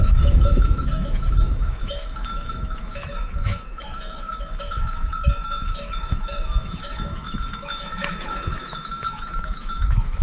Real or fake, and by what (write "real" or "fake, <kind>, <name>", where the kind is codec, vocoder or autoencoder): fake, autoencoder, DAC-VAE